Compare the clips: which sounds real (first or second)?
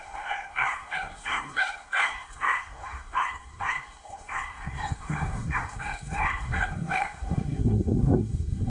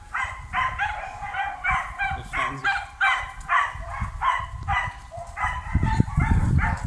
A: second